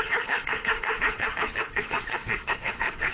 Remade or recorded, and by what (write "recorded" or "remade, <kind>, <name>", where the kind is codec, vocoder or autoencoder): remade, codec, HILCodec